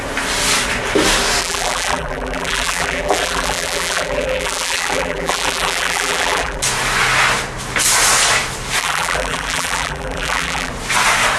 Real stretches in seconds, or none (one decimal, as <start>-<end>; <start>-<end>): 0.0-1.4; 6.6-8.8; 10.7-11.4